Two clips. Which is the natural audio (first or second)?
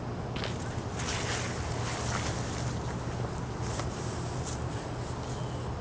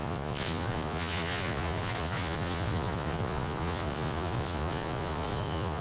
first